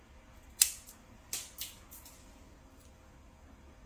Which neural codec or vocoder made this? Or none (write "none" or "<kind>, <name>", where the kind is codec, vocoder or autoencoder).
none